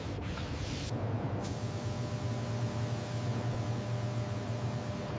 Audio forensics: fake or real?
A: real